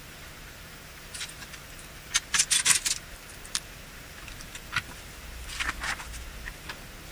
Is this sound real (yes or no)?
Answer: no